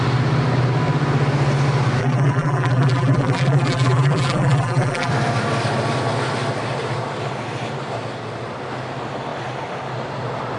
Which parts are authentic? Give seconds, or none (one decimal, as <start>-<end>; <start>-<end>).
0.0-2.0; 5.1-10.6